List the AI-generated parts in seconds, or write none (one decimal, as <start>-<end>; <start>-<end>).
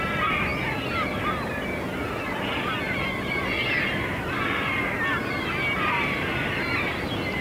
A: none